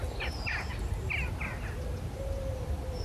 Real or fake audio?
real